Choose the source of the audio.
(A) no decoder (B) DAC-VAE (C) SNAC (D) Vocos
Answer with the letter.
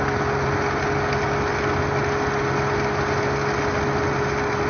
A